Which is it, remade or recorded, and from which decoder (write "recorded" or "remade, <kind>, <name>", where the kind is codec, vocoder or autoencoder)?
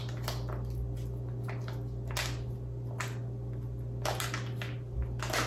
recorded